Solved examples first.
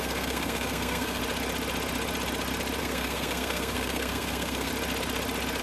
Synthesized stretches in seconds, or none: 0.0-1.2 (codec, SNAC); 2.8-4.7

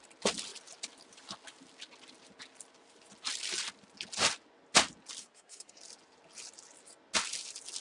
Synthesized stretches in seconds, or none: 5.2-5.8 (codec, SNAC)

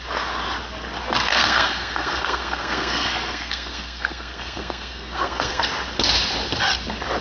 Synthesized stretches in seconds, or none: 1.3-5.6 (codec, SNAC)